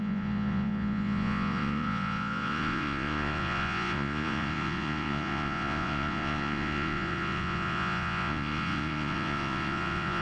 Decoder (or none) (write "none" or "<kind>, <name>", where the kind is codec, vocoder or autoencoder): vocoder, Vocos